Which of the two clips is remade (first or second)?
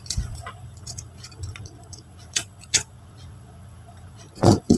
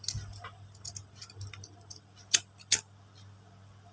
first